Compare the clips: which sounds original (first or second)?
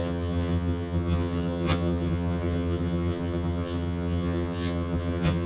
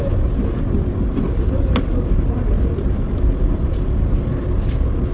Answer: second